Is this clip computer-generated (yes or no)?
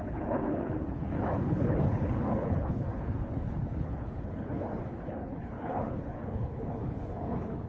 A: yes